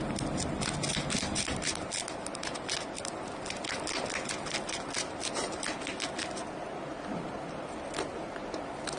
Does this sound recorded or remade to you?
recorded